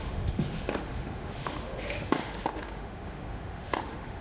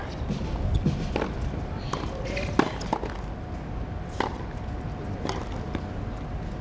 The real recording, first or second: second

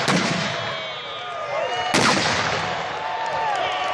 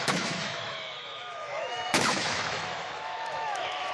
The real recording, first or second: first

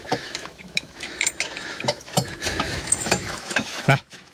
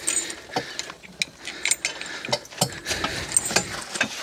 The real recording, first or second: second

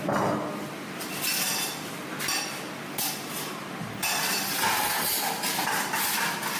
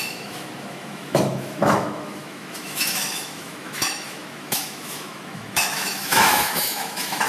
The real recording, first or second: first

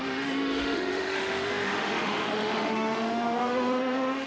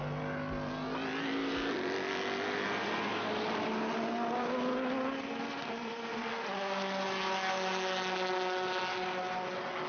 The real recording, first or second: second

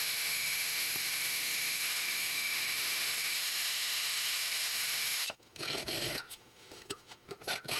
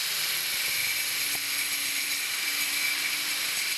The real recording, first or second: second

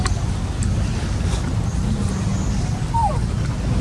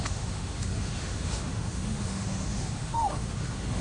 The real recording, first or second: first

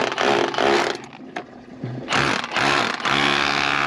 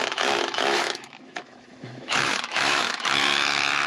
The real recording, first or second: first